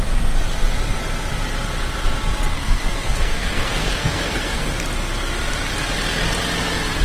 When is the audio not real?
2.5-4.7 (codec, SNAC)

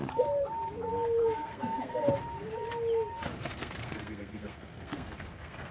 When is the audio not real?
1.2-2.1 (codec, SNAC); 3.5-5.7

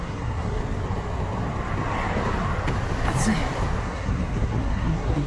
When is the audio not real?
0.0-0.6 (codec, SNAC); 3.8-5.3

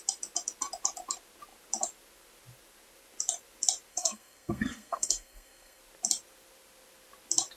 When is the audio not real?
3.9-5.8 (codec, SNAC)